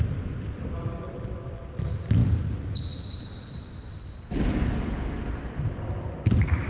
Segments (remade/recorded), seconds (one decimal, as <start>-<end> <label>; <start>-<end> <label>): 0.0-6.7 recorded